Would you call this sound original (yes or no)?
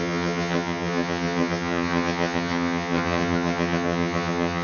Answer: no